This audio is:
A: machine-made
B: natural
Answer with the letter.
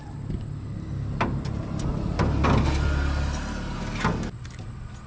B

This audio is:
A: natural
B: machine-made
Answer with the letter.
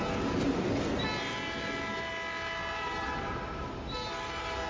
A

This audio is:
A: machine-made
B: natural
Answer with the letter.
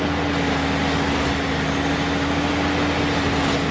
B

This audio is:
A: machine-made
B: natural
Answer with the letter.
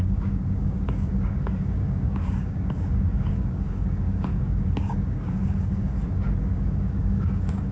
A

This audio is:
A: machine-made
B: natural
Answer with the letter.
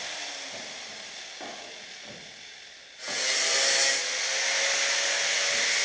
B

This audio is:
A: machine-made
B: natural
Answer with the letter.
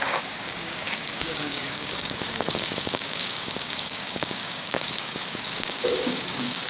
A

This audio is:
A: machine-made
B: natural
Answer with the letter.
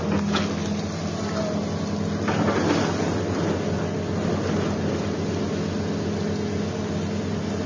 B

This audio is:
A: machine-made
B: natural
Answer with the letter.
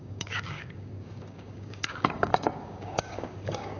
A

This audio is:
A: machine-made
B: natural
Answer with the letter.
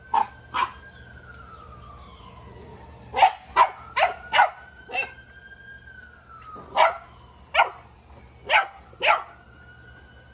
B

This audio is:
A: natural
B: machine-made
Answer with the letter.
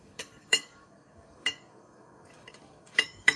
B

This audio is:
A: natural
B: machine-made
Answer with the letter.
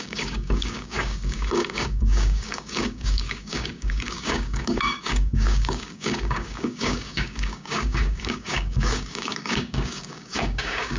B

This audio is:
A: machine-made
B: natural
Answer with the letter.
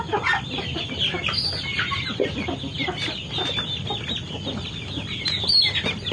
B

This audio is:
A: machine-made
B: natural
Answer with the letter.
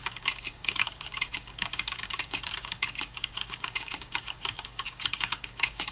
A